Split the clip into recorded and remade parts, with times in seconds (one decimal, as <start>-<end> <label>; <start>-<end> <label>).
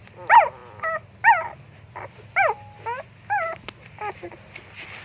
0.0-5.0 recorded